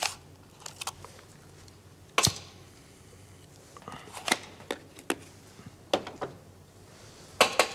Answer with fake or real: real